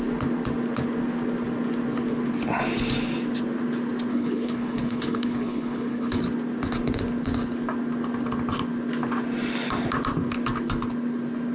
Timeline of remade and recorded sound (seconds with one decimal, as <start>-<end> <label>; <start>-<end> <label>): 0.0-4.1 recorded; 4.1-6.2 remade; 6.2-11.5 recorded